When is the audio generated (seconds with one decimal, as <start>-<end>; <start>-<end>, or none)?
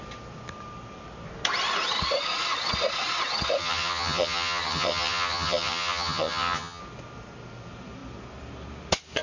3.6-6.8